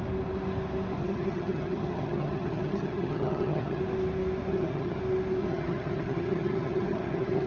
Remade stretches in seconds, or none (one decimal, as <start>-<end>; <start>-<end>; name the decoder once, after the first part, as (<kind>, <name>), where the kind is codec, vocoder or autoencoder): 1.0-3.8 (vocoder, HiFi-GAN); 4.5-5.0; 5.4-7.5